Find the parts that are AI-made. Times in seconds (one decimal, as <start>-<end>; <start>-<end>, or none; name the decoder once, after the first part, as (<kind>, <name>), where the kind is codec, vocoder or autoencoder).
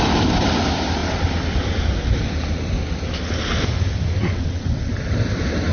4.2-4.9 (vocoder, WaveNeXt)